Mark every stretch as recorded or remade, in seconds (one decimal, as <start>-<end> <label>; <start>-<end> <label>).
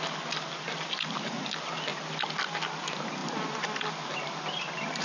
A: 0.0-5.0 recorded